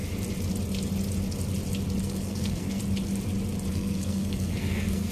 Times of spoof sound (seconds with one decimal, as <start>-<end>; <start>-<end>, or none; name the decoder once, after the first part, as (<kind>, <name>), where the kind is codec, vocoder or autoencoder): 2.0-2.8 (codec, SNAC); 3.7-5.1